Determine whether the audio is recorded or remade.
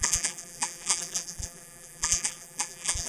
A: remade